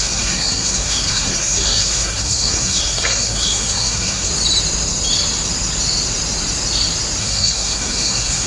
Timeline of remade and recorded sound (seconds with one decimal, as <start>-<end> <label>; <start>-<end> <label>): 0.0-4.3 remade; 4.3-7.2 recorded; 7.2-8.5 remade